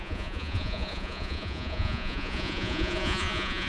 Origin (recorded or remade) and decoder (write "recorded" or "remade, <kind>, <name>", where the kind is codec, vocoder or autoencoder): remade, vocoder, Vocos